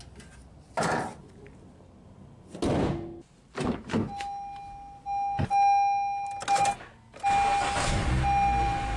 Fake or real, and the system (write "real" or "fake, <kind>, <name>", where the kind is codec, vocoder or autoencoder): real